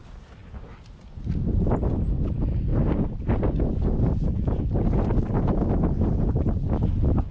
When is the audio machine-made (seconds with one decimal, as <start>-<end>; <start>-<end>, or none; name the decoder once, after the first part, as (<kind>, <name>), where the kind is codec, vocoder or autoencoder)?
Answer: none